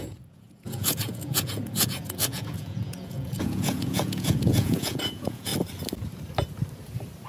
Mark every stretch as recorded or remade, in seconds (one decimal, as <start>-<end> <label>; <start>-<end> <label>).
0.0-5.5 remade; 5.5-7.3 recorded